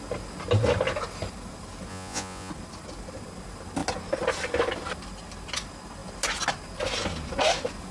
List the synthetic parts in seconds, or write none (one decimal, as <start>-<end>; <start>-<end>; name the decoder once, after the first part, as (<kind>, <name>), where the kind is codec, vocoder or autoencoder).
1.9-2.5 (vocoder, Vocos)